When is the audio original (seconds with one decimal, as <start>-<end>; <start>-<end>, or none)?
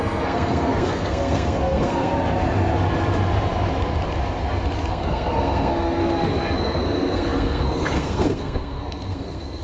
2.1-4.9; 6.0-6.6